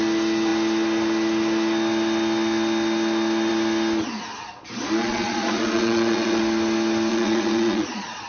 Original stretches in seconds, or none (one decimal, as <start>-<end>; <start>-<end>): 0.0-5.0; 6.4-7.1